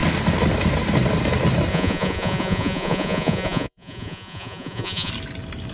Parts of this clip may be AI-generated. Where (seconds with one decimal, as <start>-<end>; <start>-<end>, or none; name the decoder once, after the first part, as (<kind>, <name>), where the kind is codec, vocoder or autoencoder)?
1.7-5.1 (vocoder, Vocos)